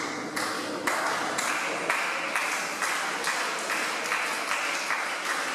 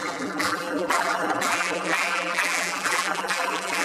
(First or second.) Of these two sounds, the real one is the first